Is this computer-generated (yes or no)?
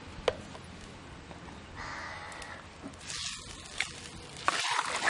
no